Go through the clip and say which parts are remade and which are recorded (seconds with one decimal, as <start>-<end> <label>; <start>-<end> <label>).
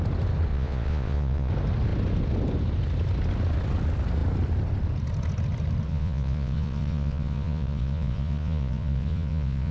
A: 0.0-0.5 recorded; 0.5-1.5 remade; 1.5-5.9 recorded; 5.9-9.7 remade